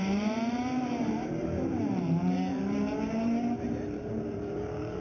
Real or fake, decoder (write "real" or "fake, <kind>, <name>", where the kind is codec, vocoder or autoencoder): fake, vocoder, BigVGAN v2